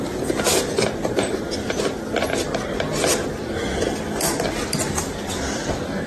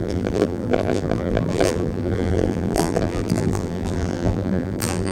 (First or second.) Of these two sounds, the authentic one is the first